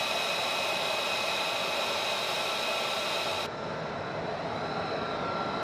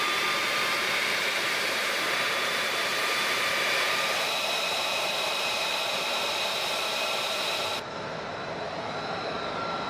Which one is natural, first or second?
first